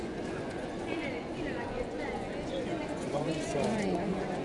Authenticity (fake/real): fake